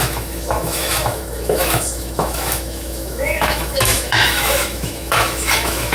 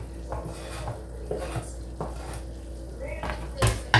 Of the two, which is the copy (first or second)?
first